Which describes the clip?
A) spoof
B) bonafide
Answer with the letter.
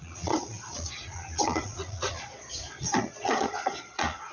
A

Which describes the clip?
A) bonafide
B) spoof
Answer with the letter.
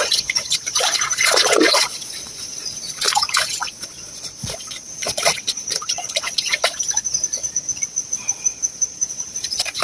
B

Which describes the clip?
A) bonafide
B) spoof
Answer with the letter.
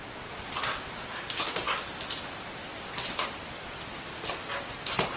A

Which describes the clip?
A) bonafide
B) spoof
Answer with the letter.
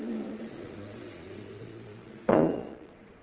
B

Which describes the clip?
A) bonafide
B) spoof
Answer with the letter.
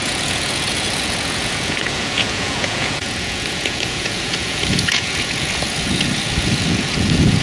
B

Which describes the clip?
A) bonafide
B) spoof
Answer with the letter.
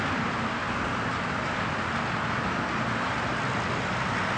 A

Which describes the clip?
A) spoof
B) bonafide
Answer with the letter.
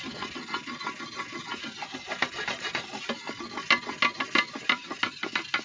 B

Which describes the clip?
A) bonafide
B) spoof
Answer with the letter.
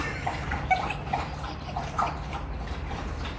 A